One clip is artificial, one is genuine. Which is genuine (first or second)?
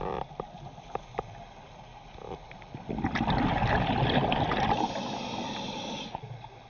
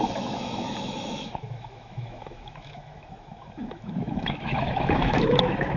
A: first